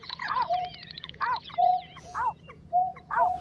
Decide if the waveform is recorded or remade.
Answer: remade